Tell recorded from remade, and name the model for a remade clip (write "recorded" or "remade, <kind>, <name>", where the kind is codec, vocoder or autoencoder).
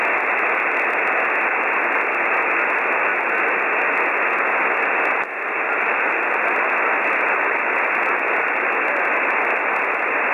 recorded